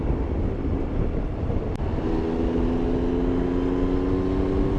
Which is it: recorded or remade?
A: recorded